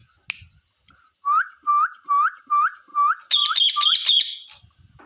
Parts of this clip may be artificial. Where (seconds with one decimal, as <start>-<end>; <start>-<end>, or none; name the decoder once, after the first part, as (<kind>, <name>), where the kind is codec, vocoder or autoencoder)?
none